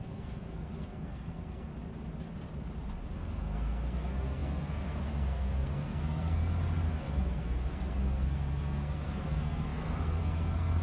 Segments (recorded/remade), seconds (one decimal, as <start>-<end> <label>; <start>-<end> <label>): 0.0-1.7 remade; 1.7-3.1 recorded; 3.1-6.4 remade; 6.4-7.0 recorded; 7.0-10.8 remade